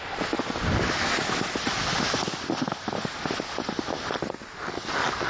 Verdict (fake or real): real